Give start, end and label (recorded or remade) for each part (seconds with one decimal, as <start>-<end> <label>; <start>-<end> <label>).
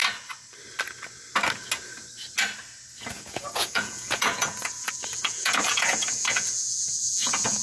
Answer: 0.0-3.1 recorded; 3.1-7.6 remade